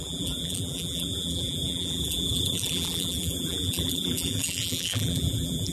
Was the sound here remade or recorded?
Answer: remade